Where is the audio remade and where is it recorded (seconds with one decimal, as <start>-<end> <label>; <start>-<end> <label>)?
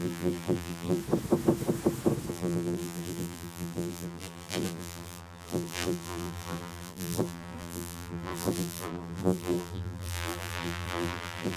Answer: 0.0-1.0 remade; 1.0-2.3 recorded; 2.3-11.6 remade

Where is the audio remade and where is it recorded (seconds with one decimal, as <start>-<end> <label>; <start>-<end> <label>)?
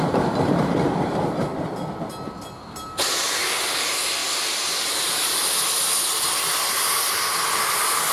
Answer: 0.0-1.5 remade; 1.5-3.6 recorded; 3.6-4.2 remade; 4.2-5.0 recorded; 5.0-5.4 remade; 5.4-8.1 recorded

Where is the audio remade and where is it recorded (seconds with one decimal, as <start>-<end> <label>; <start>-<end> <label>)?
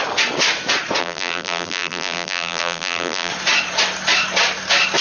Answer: 0.0-1.0 recorded; 1.0-3.3 remade; 3.3-5.0 recorded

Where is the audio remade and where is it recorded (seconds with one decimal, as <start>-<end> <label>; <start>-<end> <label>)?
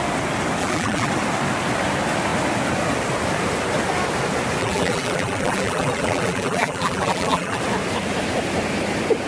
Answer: 0.0-0.6 recorded; 0.6-1.1 remade; 1.1-4.6 recorded; 4.6-7.6 remade; 7.6-9.3 recorded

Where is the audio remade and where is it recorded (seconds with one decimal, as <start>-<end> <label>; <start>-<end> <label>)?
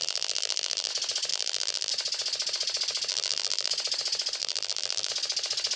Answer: 0.0-0.9 remade; 0.9-1.3 recorded; 1.3-1.9 remade; 1.9-3.1 recorded; 3.1-3.7 remade; 3.7-4.4 recorded; 4.4-5.1 remade; 5.1-5.8 recorded